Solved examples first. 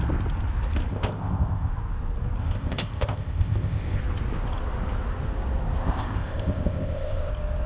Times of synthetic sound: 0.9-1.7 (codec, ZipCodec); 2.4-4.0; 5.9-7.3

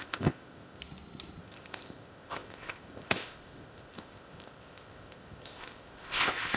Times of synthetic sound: 0.0-0.8 (codec, ZipCodec); 1.4-6.6

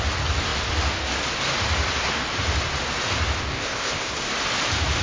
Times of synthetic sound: 3.5-4.1 (codec, ZipCodec)

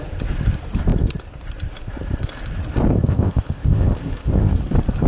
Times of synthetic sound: 2.9-4.5 (codec, ZipCodec)

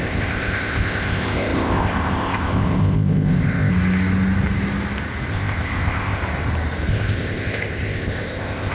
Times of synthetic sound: 0.0-3.7 (codec, ZipCodec); 5.3-6.2; 6.9-8.7

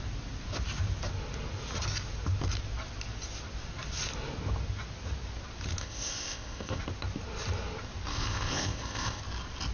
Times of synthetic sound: 5.8-6.8 (codec, ZipCodec); 8.1-9.2

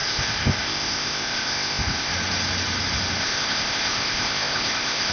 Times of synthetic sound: 0.0-2.1 (codec, ZipCodec); 3.2-5.1

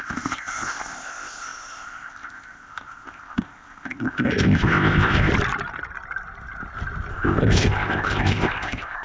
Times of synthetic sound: 0.0-5.3 (codec, ZipCodec); 7.1-9.0